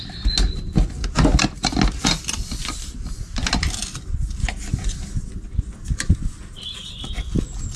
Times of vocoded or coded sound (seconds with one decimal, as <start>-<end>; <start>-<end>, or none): none